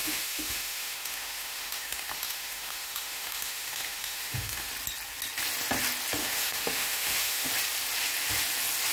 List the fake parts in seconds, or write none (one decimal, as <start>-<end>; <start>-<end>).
0.0-4.7; 6.2-7.5